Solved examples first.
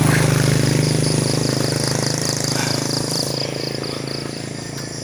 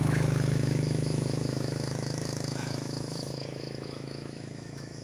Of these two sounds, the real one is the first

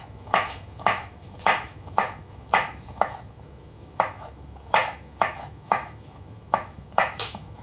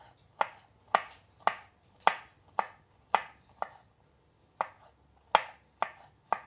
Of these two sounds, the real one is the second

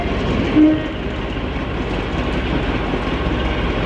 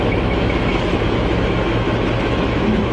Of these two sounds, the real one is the first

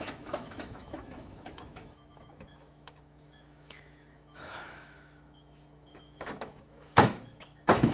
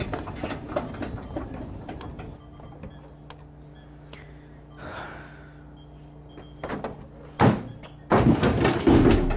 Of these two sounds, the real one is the second